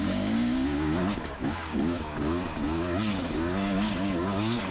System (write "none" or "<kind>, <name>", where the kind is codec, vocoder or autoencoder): codec, DAC